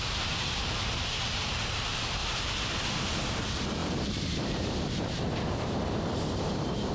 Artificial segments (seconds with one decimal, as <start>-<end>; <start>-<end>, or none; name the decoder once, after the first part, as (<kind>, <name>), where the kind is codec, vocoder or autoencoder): 0.0-2.2 (vocoder, BigVGAN v2); 3.0-6.9